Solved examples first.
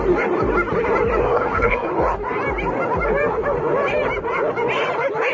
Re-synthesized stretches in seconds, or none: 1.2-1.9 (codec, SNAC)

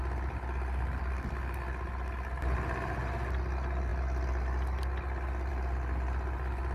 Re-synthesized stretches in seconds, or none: none

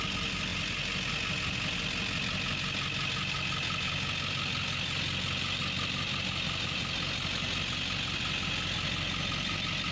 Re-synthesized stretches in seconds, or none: none

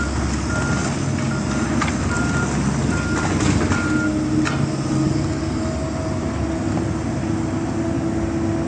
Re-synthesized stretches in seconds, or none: none

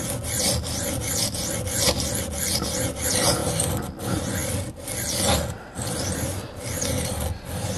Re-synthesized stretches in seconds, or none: none

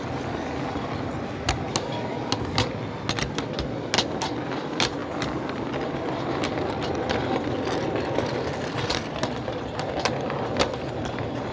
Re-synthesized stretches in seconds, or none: none

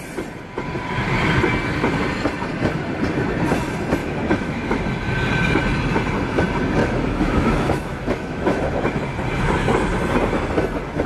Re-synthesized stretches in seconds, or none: 4.0-4.8 (autoencoder, DAC-VAE); 6.8-8.6